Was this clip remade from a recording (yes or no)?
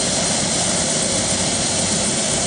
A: no